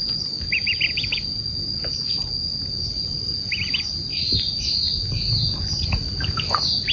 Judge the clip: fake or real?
real